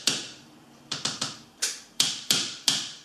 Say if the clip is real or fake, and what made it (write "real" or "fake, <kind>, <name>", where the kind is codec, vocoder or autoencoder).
fake, vocoder, BigVGAN v2